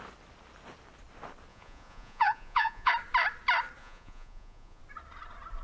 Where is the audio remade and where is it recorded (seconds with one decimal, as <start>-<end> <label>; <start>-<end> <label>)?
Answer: 0.0-1.5 recorded; 1.5-2.9 remade; 2.9-3.8 recorded; 3.8-4.8 remade; 4.8-5.6 recorded